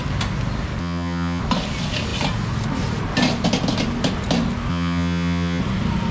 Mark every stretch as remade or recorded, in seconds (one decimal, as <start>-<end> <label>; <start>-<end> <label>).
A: 0.0-0.8 recorded; 0.8-1.4 remade; 1.4-4.7 recorded; 4.7-5.6 remade; 5.6-6.1 recorded